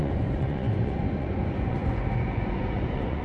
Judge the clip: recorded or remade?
remade